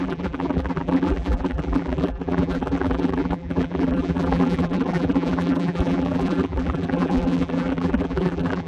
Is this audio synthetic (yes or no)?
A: yes